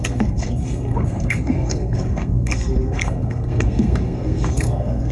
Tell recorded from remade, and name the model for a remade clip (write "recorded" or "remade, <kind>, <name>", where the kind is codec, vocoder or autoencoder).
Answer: remade, codec, SNAC